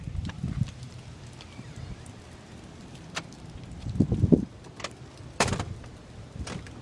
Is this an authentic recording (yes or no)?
no